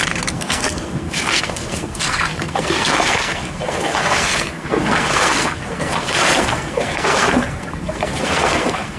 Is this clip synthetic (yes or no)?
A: yes